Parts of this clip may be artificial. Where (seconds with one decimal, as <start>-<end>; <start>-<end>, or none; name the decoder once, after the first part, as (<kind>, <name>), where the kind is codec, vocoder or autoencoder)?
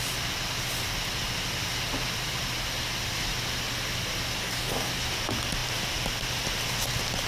4.4-4.9 (codec, DAC)